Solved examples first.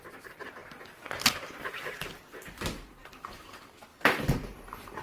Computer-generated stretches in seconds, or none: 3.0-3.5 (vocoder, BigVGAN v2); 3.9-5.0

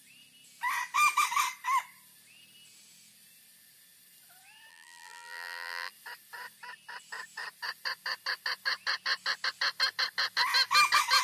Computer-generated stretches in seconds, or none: 4.7-5.9 (vocoder, BigVGAN v2)